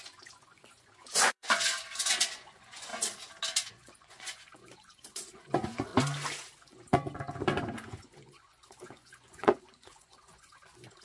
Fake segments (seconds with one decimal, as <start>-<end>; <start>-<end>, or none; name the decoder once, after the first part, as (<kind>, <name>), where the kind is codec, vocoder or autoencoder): 0.0-2.9 (vocoder, Vocos); 3.7-5.9; 6.6-11.0